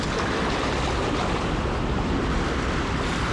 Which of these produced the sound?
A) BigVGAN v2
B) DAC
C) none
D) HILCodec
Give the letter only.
C